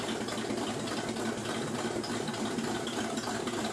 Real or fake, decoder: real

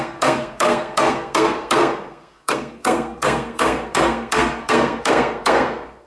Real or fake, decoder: fake, codec, SNAC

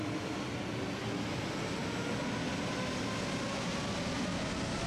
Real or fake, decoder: real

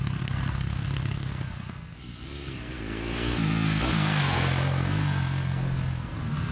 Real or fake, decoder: fake, codec, SNAC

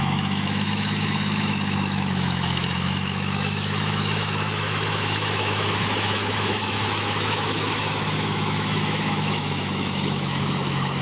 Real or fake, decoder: fake, autoencoder, DAC-VAE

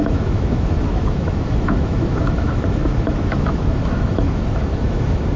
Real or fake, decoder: fake, autoencoder, DAC-VAE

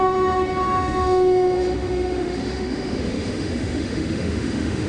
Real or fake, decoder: fake, autoencoder, DAC-VAE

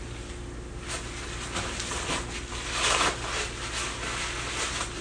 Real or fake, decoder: real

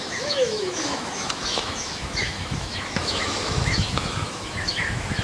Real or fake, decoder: fake, autoencoder, DAC-VAE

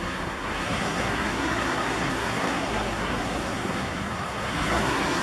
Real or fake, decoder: fake, codec, SNAC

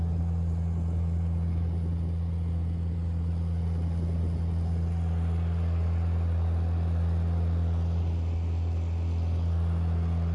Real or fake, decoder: real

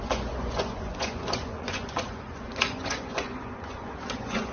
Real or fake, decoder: fake, vocoder, Vocos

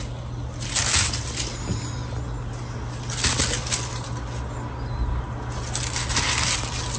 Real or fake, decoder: real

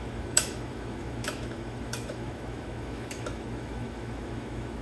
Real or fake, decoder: fake, autoencoder, DAC-VAE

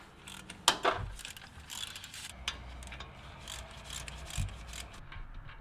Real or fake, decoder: real